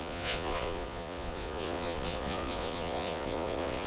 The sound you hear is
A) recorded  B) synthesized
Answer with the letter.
B